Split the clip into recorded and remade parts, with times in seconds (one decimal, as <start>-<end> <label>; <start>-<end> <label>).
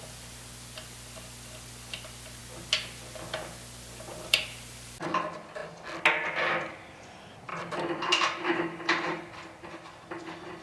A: 0.0-2.4 remade; 2.4-4.1 recorded; 4.1-5.6 remade; 5.6-6.7 recorded; 6.7-10.6 remade